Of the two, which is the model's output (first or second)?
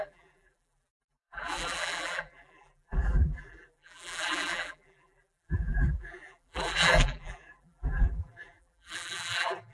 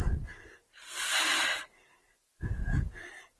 first